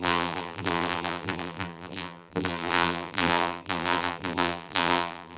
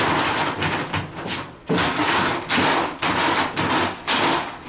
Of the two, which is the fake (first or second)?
first